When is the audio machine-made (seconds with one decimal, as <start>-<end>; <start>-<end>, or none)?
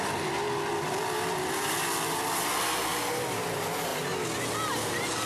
none